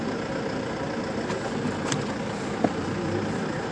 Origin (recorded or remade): remade